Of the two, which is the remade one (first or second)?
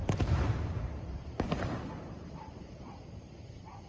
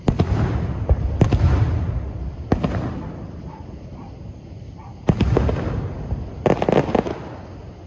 first